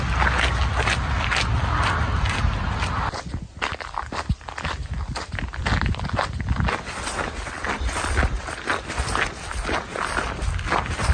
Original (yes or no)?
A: yes